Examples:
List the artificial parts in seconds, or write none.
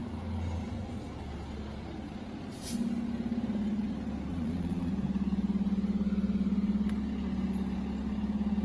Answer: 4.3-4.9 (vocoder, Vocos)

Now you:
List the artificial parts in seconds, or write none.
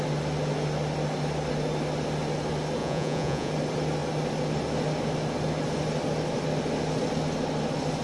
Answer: 2.8-3.5 (vocoder, Vocos)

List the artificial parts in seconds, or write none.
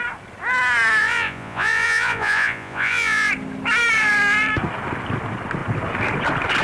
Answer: 1.0-3.3 (vocoder, Vocos)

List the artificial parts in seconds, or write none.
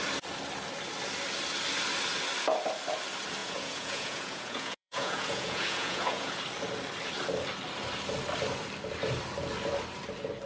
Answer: 3.4-6.4 (vocoder, Vocos)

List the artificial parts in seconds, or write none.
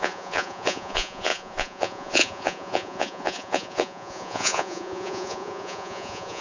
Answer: 0.0-6.4 (vocoder, Vocos)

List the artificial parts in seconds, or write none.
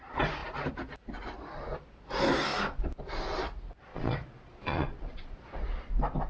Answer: 3.9-5.3 (vocoder, Vocos)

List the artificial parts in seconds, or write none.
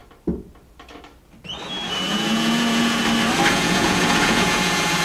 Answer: 2.1-3.0 (vocoder, Vocos); 3.5-5.0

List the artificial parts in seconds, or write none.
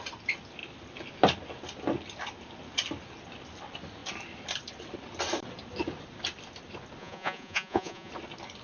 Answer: 7.0-8.1 (vocoder, Vocos)